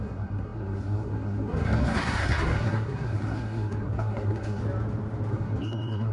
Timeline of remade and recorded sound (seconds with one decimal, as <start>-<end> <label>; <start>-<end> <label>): 0.0-4.6 remade; 4.6-5.3 recorded; 5.3-6.1 remade